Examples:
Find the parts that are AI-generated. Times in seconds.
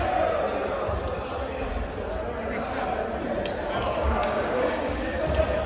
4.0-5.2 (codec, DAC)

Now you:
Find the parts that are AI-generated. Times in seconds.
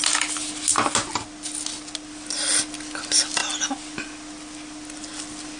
none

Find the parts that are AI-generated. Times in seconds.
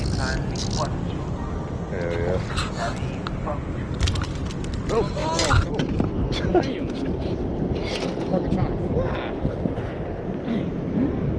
none